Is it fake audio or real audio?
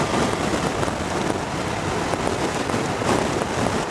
real